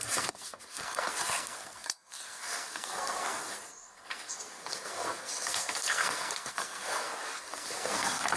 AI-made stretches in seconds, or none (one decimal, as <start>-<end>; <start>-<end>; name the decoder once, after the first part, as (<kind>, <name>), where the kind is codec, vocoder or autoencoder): 0.0-8.4 (codec, SNAC)